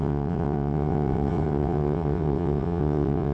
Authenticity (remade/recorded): remade